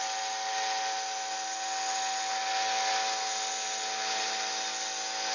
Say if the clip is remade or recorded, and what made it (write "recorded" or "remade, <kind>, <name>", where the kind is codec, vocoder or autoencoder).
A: recorded